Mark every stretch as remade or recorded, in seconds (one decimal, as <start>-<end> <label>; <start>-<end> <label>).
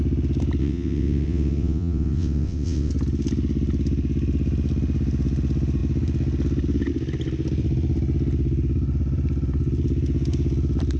0.0-0.6 recorded; 0.6-2.9 remade; 2.9-11.0 recorded